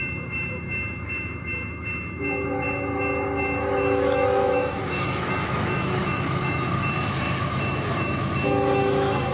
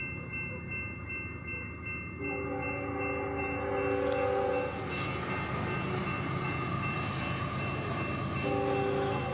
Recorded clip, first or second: second